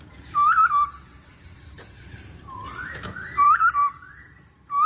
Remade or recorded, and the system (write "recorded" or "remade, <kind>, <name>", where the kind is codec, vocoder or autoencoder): remade, vocoder, BigVGAN v2